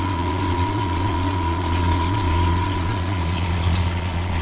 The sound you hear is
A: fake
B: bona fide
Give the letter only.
A